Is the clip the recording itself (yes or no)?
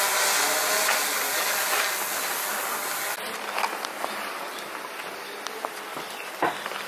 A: yes